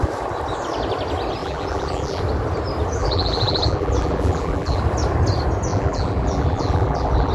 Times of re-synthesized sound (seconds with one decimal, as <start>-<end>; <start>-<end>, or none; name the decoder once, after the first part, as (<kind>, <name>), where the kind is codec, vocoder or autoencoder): 1.4-2.2 (vocoder, BigVGAN v2); 3.0-4.8; 5.7-7.3